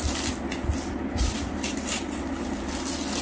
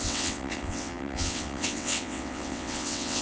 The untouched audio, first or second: first